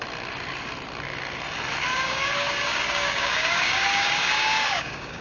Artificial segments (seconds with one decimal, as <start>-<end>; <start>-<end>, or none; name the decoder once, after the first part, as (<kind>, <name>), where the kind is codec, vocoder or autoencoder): 1.9-5.2 (codec, DAC)